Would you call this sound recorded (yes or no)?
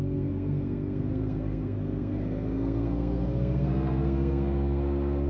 no